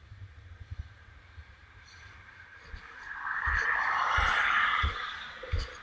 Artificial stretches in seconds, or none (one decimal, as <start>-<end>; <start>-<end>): 0.0-3.1; 4.6-5.8